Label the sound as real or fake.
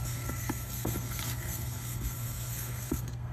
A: fake